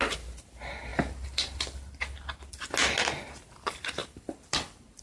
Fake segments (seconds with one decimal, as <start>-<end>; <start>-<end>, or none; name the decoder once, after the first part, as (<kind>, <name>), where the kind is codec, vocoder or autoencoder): 0.9-2.5 (vocoder, BigVGAN v2); 4.0-5.0